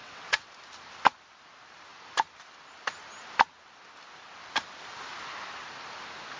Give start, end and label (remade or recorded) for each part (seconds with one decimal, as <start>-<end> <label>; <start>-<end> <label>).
0.0-0.5 remade; 0.5-6.4 recorded